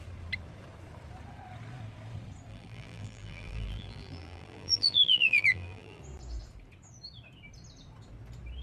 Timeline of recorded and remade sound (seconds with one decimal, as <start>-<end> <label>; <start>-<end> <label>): 0.0-2.5 recorded; 2.5-6.0 remade; 6.0-8.6 recorded